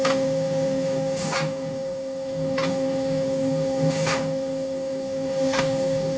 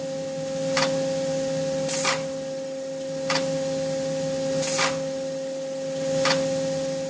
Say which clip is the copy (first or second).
first